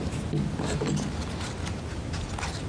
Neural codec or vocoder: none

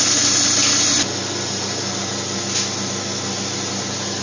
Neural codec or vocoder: none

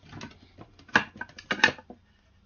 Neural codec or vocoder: none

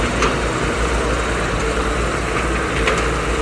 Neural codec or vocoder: none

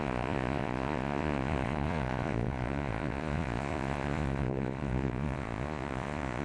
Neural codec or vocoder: vocoder, Vocos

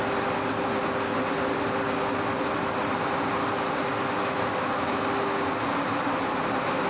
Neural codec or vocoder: none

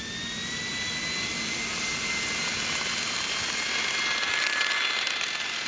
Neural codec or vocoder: none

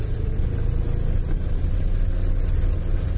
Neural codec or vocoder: none